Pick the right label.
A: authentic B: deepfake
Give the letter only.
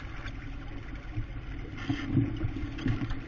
A